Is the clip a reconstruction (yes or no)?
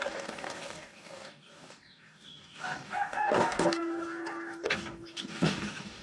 yes